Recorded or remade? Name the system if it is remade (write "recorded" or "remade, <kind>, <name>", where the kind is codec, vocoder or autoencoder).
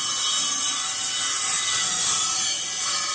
recorded